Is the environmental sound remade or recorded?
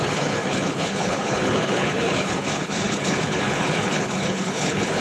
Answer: remade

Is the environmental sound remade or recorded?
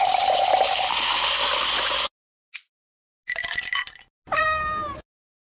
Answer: recorded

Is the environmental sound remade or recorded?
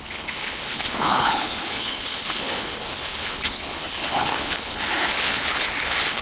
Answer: remade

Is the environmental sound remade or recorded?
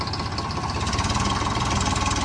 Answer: recorded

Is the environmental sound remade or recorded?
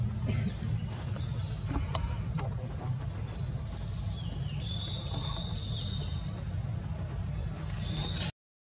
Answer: recorded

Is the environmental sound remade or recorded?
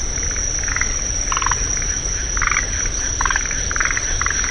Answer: recorded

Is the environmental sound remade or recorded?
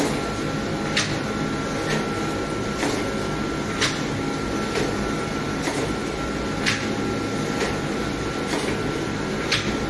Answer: recorded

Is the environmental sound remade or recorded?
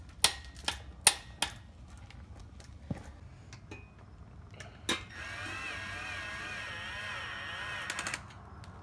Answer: recorded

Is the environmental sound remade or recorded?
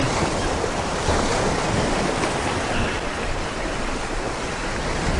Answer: recorded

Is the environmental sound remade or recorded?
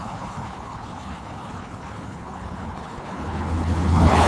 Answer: remade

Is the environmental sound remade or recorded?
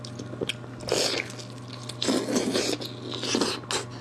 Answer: recorded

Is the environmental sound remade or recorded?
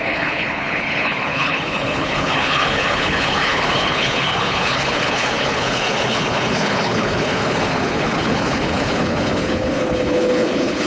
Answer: remade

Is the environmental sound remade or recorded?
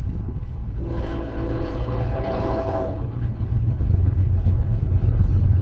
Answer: remade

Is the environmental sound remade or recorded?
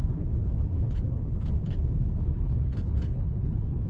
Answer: remade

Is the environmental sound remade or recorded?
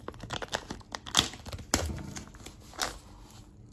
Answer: recorded